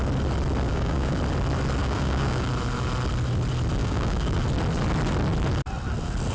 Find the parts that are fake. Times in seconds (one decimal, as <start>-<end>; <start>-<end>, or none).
0.7-1.2; 1.8-2.5; 3.8-4.4

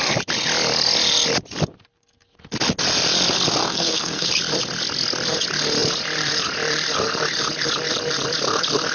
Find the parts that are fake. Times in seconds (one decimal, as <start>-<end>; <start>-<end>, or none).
3.6-4.3

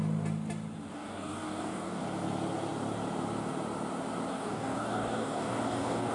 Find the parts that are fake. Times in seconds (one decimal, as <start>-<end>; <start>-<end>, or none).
0.9-2.0; 4.3-6.1